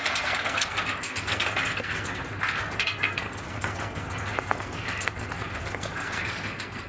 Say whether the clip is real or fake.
fake